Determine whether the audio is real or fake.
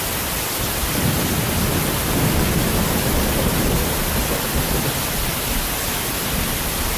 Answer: real